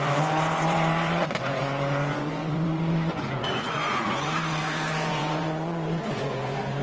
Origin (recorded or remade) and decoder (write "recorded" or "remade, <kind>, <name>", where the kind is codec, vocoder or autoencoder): remade, vocoder, Vocos